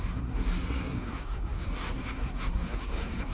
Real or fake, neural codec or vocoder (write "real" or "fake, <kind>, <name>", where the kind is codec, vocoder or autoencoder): fake, codec, SNAC